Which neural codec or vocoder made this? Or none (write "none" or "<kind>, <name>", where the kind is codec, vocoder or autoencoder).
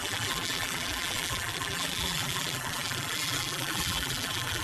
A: vocoder, BigVGAN v2